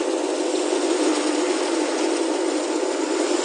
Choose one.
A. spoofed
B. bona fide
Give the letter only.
A